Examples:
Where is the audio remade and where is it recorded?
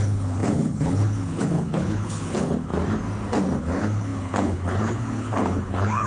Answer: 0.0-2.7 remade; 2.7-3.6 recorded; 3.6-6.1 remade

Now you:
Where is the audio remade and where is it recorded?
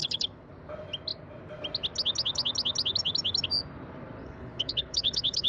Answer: 0.0-0.5 remade; 0.5-4.2 recorded; 4.2-5.5 remade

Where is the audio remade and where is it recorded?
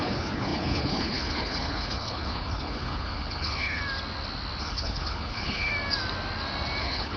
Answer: 0.0-3.8 remade; 3.8-4.6 recorded; 4.6-5.7 remade; 5.7-6.8 recorded; 6.8-7.2 remade